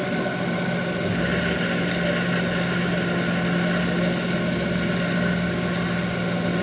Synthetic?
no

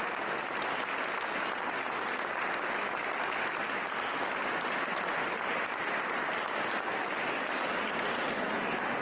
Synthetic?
no